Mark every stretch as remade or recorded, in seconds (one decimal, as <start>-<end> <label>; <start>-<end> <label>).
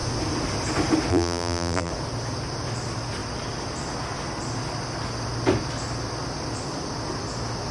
0.0-1.1 recorded; 1.1-1.9 remade; 1.9-7.7 recorded